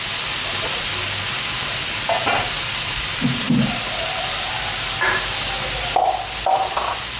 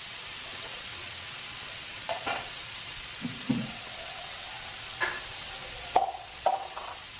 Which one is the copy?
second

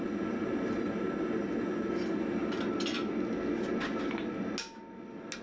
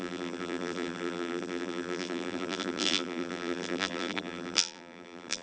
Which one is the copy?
second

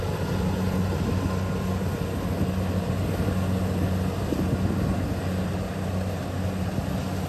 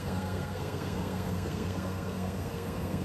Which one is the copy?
second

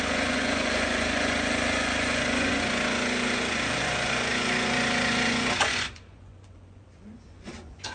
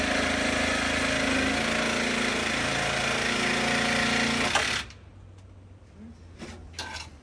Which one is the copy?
first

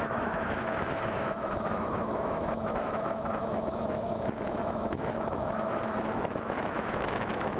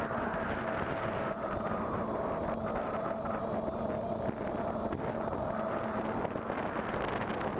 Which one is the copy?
first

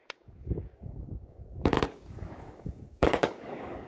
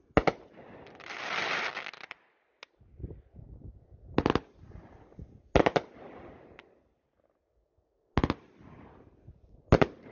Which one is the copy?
first